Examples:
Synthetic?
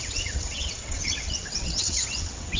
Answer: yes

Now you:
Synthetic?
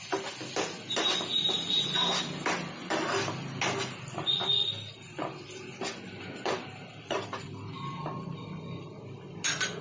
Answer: no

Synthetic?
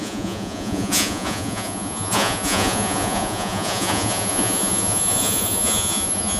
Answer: yes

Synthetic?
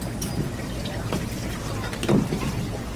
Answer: yes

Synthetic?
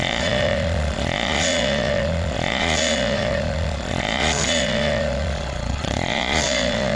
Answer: yes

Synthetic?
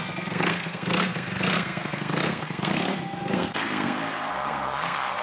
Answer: yes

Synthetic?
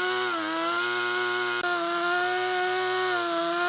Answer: no